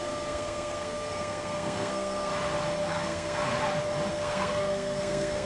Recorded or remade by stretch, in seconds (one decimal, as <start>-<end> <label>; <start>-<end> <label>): 0.0-2.3 remade; 2.3-2.9 recorded; 2.9-3.5 remade; 3.5-4.1 recorded; 4.1-5.5 remade